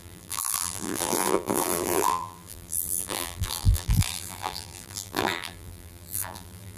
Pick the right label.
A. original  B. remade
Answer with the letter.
B